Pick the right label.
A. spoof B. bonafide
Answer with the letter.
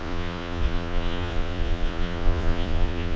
A